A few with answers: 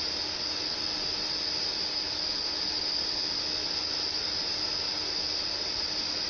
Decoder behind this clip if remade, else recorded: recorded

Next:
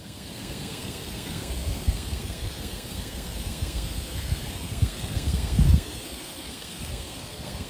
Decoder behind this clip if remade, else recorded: remade, codec, SNAC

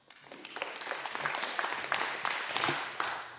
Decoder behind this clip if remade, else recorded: recorded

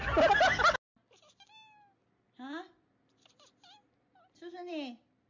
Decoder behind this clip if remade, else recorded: recorded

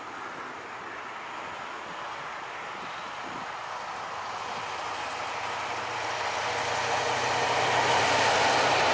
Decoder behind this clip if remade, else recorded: recorded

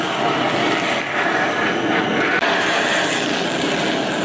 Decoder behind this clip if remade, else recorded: recorded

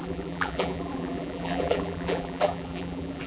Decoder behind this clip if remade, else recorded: remade, vocoder, BigVGAN v2